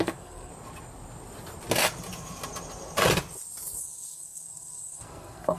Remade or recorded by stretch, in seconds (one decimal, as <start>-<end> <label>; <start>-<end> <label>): 0.0-0.5 remade; 0.5-3.8 recorded; 3.8-5.6 remade